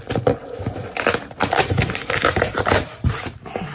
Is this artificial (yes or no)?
no